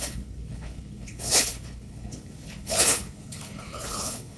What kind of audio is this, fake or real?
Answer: fake